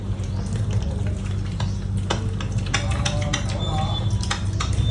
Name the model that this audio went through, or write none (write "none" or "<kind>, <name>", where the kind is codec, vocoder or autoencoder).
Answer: none